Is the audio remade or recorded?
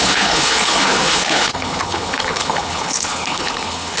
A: remade